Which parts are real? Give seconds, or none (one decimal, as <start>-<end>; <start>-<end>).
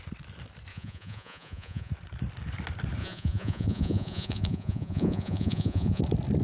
0.0-0.7; 1.9-3.0; 6.0-6.4